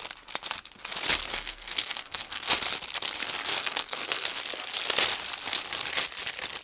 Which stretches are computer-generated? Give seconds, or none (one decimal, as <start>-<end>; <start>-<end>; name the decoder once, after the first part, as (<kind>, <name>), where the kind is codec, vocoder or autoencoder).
1.3-2.5 (codec, SNAC); 3.5-4.4